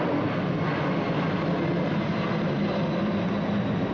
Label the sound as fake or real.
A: real